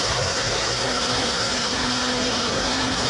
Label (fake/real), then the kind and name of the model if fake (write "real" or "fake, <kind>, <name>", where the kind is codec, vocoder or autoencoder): fake, codec, SNAC